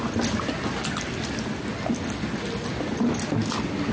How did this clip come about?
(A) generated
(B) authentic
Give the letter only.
B